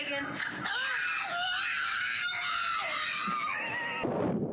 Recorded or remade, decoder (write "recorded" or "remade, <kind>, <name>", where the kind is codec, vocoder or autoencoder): recorded